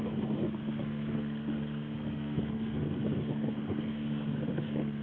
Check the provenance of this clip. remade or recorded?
remade